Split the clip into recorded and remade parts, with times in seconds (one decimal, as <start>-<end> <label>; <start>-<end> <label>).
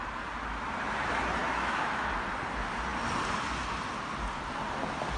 0.0-1.4 recorded; 1.4-2.1 remade; 2.1-5.2 recorded